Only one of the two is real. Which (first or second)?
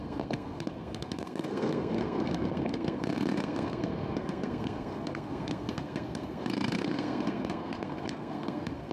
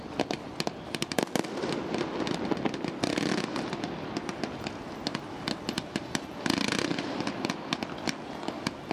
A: second